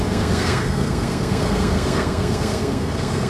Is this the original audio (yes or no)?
no